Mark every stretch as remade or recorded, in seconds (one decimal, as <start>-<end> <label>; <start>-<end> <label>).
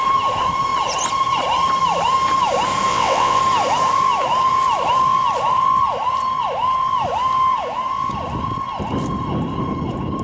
0.0-2.9 recorded; 2.9-3.4 remade; 3.4-10.2 recorded